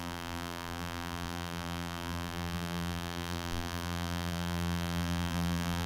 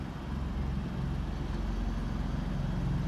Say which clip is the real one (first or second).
second